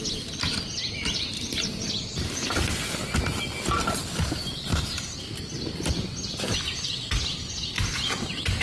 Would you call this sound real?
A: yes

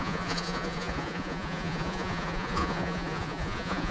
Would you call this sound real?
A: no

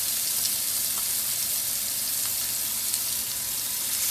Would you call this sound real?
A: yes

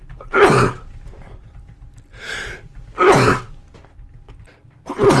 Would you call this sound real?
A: yes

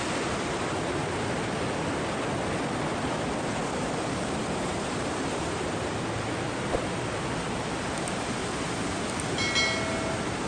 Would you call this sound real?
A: yes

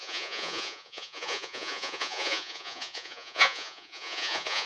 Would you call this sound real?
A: no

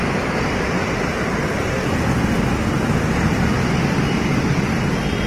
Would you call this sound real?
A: yes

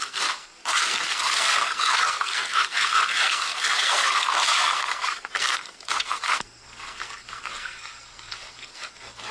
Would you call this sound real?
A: no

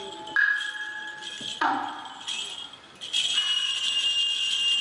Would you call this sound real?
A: yes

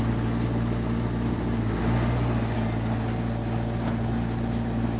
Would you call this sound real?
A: yes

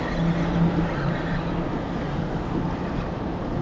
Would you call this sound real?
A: yes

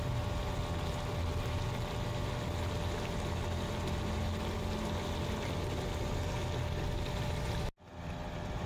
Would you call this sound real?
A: yes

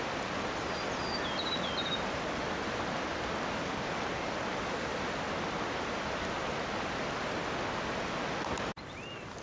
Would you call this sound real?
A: yes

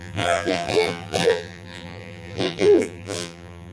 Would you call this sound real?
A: no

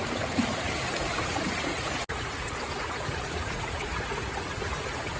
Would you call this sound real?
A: no